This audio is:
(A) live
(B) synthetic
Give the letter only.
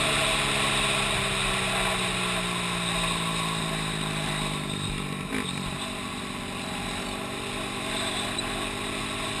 A